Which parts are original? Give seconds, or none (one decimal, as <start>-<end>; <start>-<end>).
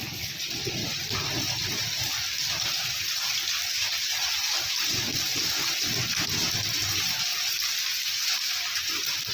0.0-0.8; 4.1-9.3